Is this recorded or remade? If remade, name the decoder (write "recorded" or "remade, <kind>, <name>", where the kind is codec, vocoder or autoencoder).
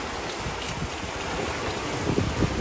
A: recorded